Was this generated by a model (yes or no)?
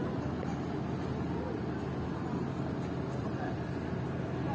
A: no